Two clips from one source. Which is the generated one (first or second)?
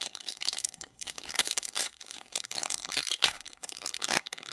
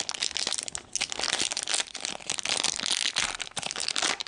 first